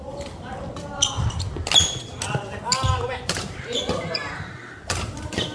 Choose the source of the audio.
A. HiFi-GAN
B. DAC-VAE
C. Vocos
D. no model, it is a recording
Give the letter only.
D